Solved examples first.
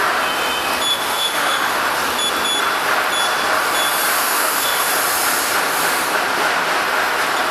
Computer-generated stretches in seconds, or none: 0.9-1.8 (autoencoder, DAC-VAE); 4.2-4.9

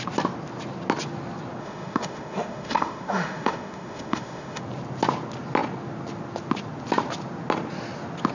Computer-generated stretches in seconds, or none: 1.6-4.6 (autoencoder, DAC-VAE)

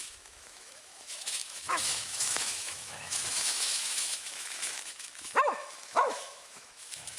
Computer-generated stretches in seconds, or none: 0.0-7.2 (autoencoder, DAC-VAE)

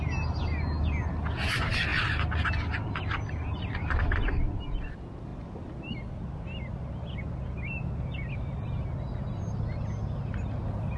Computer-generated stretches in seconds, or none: none

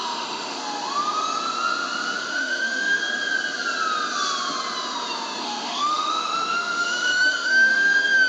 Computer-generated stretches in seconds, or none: 0.0-0.6 (autoencoder, DAC-VAE); 2.2-3.0; 5.4-8.3

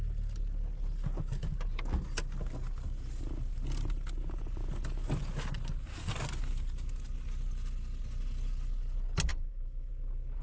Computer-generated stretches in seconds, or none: 9.3-9.9 (autoencoder, DAC-VAE)

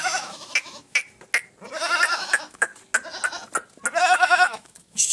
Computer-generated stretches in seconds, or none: 0.0-1.0 (autoencoder, DAC-VAE); 2.1-2.7; 4.0-5.1

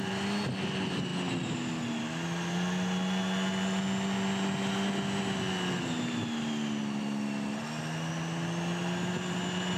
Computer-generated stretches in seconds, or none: none